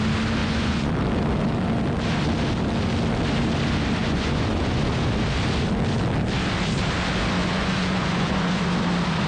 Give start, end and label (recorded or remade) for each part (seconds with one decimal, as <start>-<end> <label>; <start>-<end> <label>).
0.0-0.4 recorded; 0.4-0.9 remade; 0.9-4.0 recorded; 4.0-4.9 remade; 4.9-7.4 recorded; 7.4-8.6 remade; 8.6-9.3 recorded